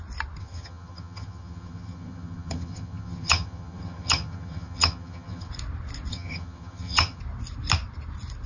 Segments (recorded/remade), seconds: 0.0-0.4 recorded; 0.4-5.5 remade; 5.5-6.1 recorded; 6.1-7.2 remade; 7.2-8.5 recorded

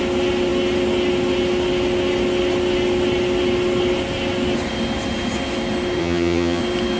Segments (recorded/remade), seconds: 0.0-6.0 recorded; 6.0-6.6 remade; 6.6-7.0 recorded

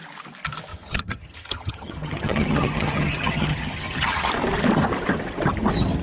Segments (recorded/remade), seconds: 0.0-0.7 recorded; 0.7-4.3 remade; 4.3-6.0 recorded

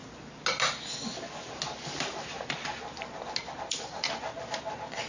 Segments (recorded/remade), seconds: 0.0-5.1 recorded